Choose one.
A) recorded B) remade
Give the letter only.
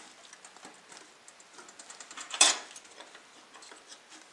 A